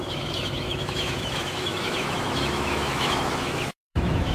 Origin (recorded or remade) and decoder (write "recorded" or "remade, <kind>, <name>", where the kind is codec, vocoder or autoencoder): remade, autoencoder, DAC-VAE